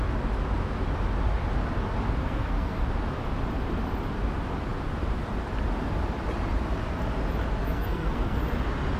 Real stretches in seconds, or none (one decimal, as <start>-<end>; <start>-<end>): 0.0-2.2; 2.8-7.6; 8.4-9.0